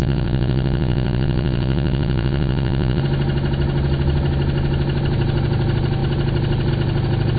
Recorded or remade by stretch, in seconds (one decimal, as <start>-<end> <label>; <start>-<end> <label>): 0.0-3.0 remade; 3.0-7.4 recorded